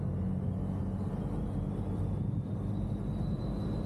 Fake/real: real